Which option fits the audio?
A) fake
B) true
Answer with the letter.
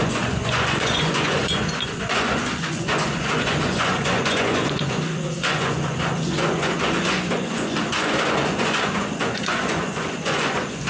A